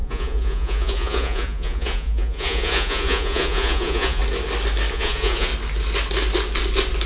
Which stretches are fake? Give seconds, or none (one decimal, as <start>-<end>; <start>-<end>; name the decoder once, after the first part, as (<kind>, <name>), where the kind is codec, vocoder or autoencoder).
0.0-4.2 (vocoder, Vocos); 4.9-5.5